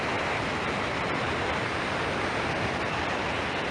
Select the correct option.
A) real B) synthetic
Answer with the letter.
A